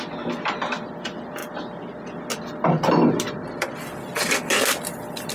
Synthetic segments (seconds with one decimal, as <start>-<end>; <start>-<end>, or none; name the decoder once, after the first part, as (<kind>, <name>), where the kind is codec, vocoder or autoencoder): none